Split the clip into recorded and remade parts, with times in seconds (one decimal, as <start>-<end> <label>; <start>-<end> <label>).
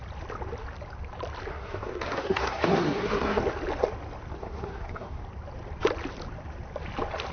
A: 0.0-1.5 recorded; 1.5-3.4 remade; 3.4-4.4 recorded; 4.4-5.2 remade; 5.2-7.3 recorded